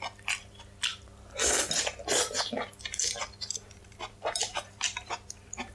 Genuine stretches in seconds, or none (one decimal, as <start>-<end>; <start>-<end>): 0.0-3.8